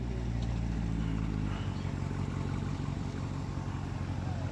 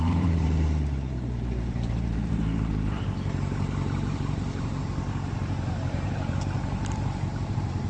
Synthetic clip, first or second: second